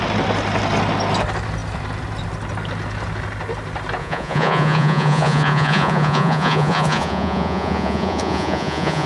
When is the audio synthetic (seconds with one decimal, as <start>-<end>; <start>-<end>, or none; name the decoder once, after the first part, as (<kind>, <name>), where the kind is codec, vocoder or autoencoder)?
4.0-9.1 (vocoder, Vocos)